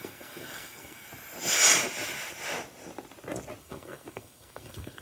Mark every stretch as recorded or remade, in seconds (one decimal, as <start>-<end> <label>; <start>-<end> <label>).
0.0-1.1 remade; 1.1-3.6 recorded; 3.6-5.0 remade